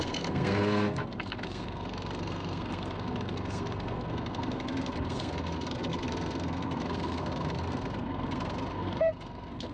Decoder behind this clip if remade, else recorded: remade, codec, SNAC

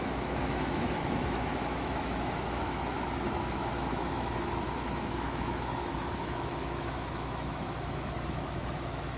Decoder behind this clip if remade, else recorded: remade, autoencoder, DAC-VAE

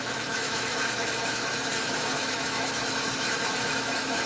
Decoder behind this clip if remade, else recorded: remade, autoencoder, DAC-VAE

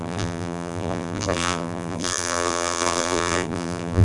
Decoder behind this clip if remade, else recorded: remade, vocoder, BigVGAN v2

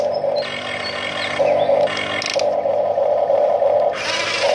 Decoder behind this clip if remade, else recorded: recorded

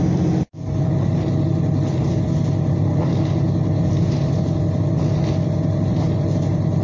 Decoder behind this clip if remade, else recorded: remade, vocoder, BigVGAN v2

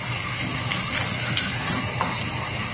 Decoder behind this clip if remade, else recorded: recorded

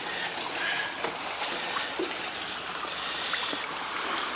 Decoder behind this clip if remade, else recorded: recorded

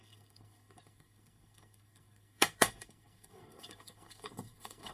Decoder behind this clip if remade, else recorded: remade, codec, SNAC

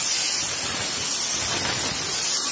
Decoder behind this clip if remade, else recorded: recorded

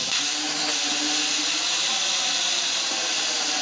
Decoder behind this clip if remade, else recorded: recorded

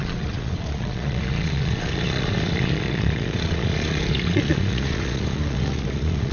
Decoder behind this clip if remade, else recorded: remade, vocoder, Vocos